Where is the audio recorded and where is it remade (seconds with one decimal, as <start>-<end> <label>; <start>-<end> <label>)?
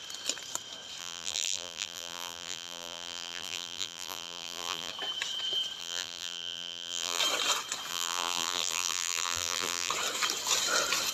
0.0-1.0 recorded; 1.0-4.9 remade; 4.9-5.8 recorded; 5.8-7.2 remade; 7.2-7.9 recorded; 7.9-9.9 remade; 9.9-11.1 recorded